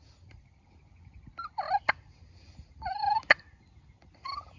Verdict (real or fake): real